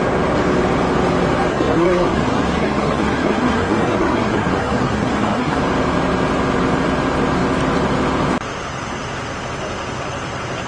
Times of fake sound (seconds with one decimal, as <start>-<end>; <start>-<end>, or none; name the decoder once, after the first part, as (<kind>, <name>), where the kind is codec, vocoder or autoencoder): 1.5-5.6 (codec, SNAC)